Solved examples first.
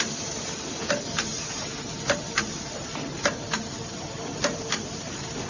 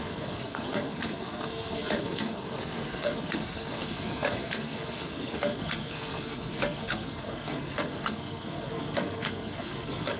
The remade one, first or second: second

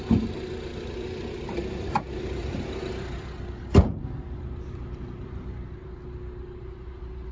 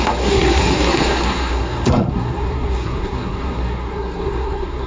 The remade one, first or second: second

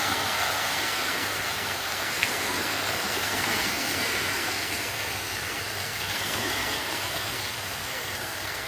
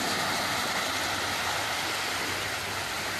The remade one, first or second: first